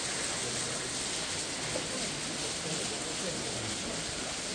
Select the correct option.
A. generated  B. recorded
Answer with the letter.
B